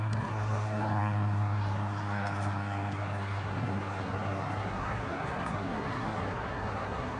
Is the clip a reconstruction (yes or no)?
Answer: yes